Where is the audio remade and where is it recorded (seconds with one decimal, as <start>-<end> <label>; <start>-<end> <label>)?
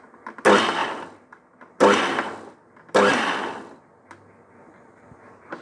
0.0-0.8 recorded; 0.8-1.8 remade; 1.8-3.1 recorded; 3.1-3.9 remade; 3.9-5.6 recorded